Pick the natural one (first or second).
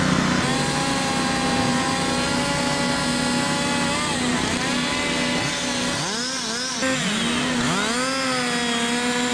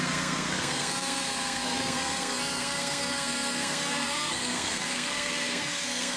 first